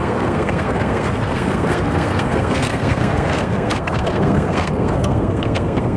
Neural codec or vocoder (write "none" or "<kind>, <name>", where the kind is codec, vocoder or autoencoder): codec, SNAC